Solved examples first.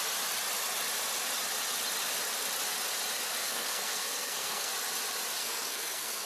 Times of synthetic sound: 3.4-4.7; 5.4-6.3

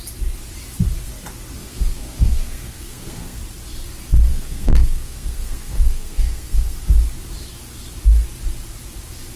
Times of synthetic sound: 1.6-3.4; 4.3-6.8